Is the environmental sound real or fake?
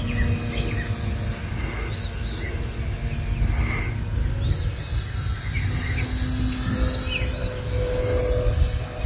real